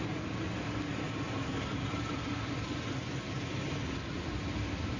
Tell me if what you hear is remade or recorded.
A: recorded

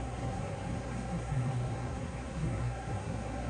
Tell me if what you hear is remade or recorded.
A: remade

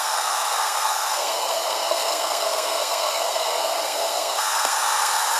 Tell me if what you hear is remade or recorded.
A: remade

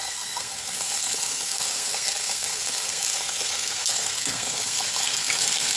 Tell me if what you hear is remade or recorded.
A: remade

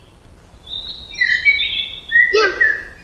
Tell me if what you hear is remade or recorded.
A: recorded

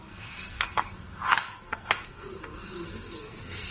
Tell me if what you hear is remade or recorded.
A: remade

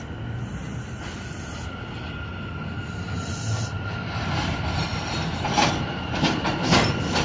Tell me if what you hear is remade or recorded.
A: recorded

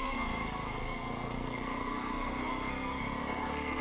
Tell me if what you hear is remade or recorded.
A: remade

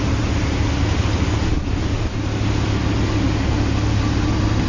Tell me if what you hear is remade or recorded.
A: recorded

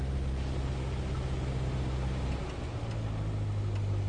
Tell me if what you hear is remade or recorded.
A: recorded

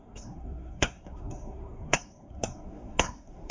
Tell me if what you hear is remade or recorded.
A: remade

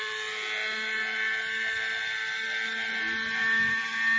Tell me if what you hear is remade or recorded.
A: recorded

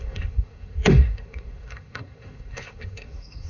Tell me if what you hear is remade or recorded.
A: remade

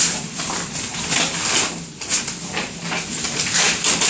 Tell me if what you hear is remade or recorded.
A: recorded